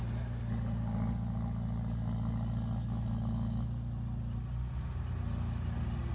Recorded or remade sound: recorded